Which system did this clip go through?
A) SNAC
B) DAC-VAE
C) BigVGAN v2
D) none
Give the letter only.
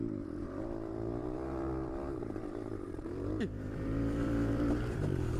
C